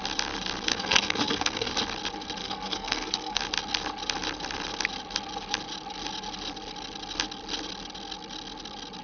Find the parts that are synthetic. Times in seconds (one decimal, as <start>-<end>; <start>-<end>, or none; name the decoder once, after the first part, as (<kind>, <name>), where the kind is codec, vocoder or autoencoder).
0.7-1.7 (codec, SNAC); 2.4-3.4